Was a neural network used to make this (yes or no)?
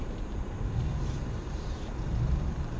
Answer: yes